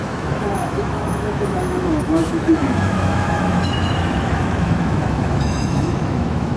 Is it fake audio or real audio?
fake